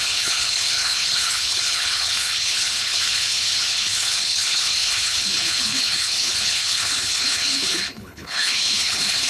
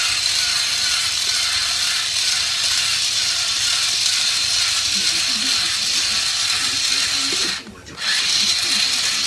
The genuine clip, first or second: second